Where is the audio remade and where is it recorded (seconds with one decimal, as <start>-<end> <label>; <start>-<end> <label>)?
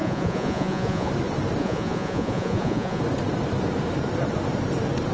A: 0.0-1.1 remade; 1.1-1.6 recorded; 1.6-3.0 remade; 3.0-5.1 recorded